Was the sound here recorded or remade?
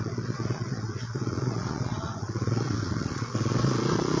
remade